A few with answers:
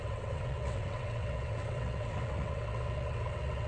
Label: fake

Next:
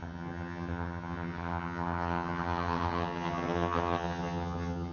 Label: fake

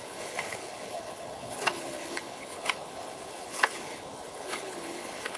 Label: fake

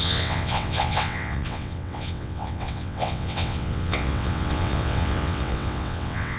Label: fake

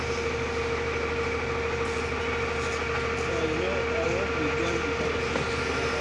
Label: real